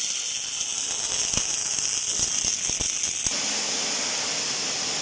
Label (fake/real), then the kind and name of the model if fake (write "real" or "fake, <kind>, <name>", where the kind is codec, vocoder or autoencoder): real